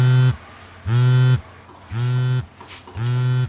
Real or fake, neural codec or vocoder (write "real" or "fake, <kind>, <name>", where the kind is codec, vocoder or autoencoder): real